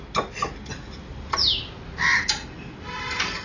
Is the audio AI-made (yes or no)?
no